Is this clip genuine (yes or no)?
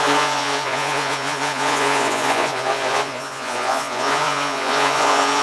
no